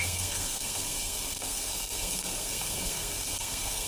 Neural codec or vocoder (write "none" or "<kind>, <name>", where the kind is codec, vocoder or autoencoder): codec, SNAC